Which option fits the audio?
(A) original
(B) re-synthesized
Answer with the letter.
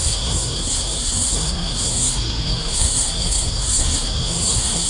B